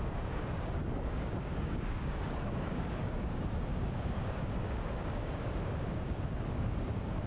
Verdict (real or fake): fake